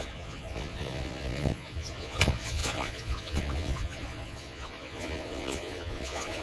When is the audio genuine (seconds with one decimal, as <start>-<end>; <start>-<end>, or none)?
none